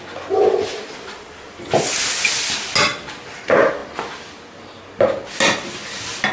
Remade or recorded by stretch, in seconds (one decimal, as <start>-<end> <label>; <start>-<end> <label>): 0.0-6.3 recorded